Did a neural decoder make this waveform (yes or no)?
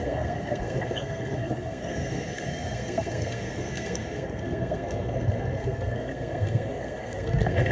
yes